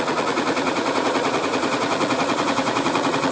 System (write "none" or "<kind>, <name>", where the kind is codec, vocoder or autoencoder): vocoder, Vocos